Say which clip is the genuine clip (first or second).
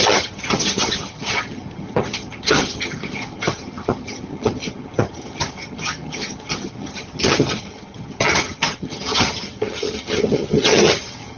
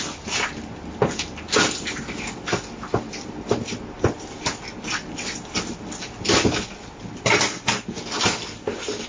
second